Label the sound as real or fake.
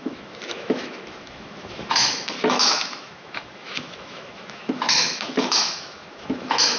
fake